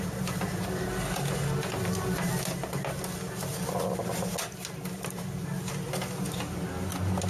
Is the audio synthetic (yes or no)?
no